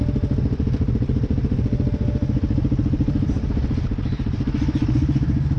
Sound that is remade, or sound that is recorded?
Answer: recorded